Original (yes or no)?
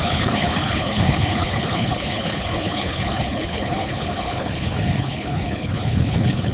no